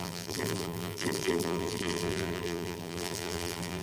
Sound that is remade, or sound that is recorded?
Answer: remade